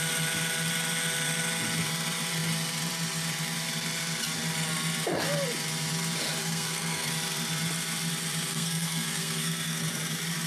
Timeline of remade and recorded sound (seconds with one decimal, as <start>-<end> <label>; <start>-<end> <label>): 0.0-6.4 recorded; 6.4-7.1 remade; 7.1-8.5 recorded; 8.5-9.8 remade; 9.8-10.5 recorded